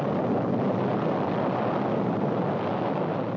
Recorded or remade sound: recorded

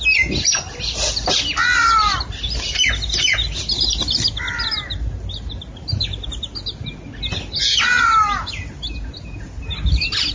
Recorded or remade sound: recorded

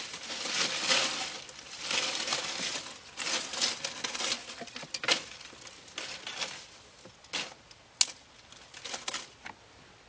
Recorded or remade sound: recorded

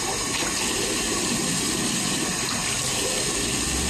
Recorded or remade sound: recorded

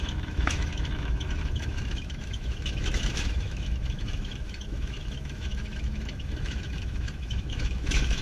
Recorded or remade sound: remade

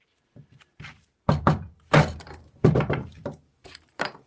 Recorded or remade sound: remade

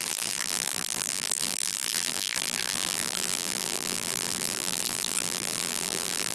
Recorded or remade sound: remade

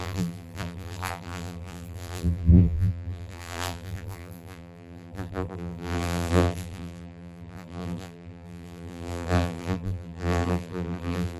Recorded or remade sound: remade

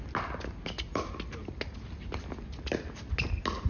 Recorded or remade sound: recorded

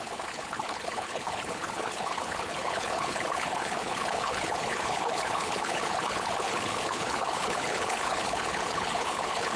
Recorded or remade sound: remade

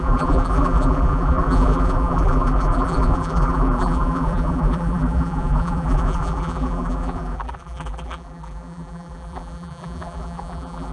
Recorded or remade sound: remade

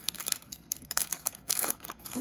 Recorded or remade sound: remade